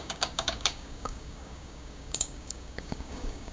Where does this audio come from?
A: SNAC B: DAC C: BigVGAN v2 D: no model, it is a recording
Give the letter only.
B